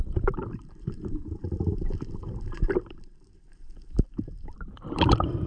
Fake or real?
fake